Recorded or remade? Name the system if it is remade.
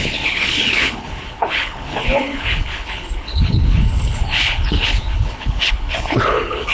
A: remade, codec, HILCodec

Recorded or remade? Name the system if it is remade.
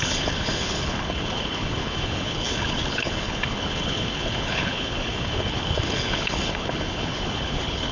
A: remade, codec, HILCodec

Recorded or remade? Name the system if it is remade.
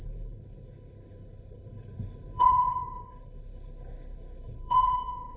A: remade, codec, HILCodec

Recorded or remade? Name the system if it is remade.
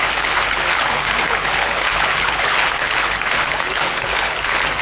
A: remade, codec, HILCodec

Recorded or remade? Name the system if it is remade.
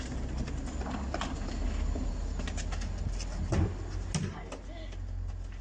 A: recorded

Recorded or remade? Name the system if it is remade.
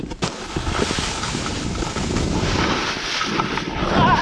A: recorded